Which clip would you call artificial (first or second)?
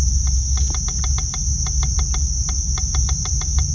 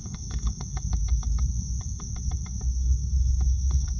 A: second